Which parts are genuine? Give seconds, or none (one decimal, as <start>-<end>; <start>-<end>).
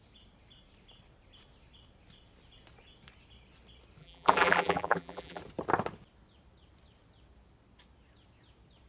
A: 0.0-4.0; 5.4-8.9